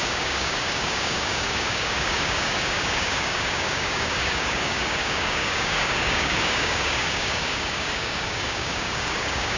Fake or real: fake